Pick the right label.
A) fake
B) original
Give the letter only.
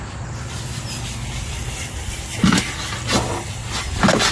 B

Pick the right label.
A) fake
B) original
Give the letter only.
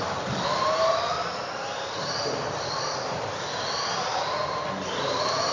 B